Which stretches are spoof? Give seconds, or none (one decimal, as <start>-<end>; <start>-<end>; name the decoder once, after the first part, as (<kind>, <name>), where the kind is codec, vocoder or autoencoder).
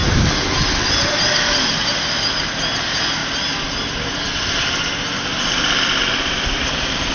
5.3-7.1 (vocoder, BigVGAN v2)